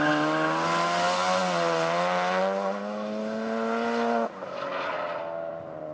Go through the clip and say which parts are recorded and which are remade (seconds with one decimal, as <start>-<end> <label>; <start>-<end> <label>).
0.0-4.7 recorded; 4.7-5.5 remade; 5.5-5.9 recorded